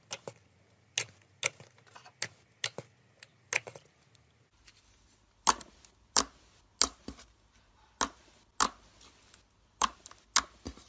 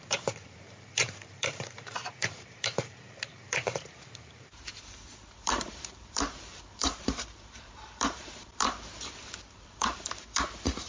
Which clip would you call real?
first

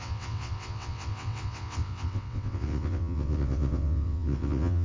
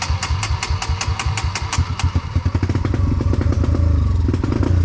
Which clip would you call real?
second